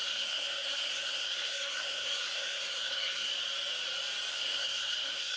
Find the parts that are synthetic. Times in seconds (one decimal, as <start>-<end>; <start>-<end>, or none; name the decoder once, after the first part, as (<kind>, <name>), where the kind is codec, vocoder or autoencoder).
0.0-3.3 (codec, SNAC); 4.3-5.4

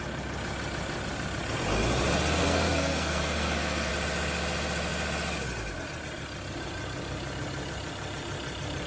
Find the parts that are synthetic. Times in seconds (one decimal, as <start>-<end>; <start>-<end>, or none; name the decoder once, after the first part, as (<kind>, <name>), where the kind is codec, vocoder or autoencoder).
2.4-3.9 (codec, SNAC)